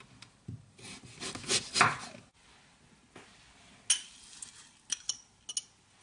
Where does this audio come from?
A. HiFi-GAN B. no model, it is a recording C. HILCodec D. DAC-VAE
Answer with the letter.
B